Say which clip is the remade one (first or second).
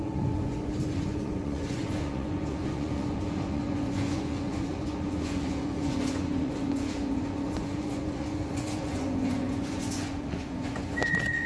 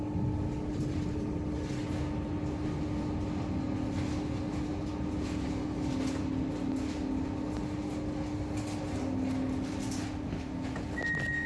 first